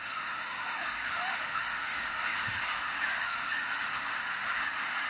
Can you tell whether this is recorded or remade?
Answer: remade